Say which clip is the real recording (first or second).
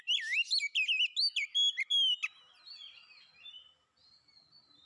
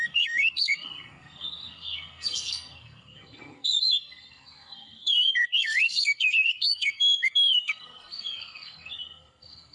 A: first